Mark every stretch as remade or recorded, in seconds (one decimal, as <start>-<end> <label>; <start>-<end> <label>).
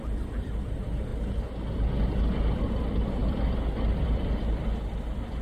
0.0-1.1 remade; 1.1-2.6 recorded; 2.6-5.4 remade